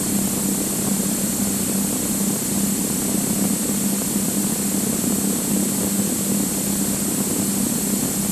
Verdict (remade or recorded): recorded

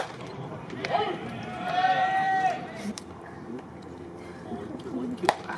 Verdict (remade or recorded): remade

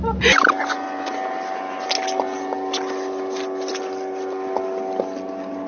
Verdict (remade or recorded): recorded